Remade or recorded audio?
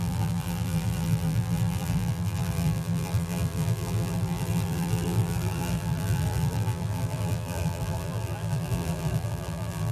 remade